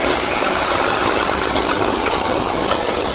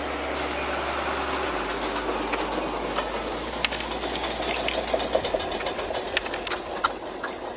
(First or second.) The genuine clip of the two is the second